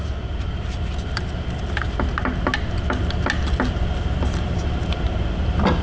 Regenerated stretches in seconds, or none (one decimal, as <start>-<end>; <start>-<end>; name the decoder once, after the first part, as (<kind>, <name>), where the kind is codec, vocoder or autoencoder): none